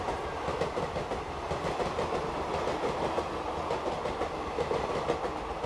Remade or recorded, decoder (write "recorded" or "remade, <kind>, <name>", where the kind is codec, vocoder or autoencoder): recorded